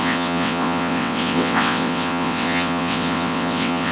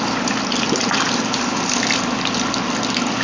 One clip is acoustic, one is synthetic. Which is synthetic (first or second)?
first